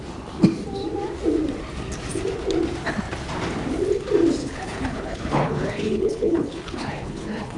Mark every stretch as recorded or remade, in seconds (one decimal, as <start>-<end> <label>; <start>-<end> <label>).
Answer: 0.0-4.4 recorded; 4.4-7.6 remade